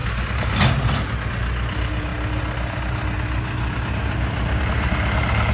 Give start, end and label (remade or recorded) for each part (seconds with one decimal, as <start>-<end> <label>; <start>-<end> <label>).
0.0-0.6 remade; 0.6-5.5 recorded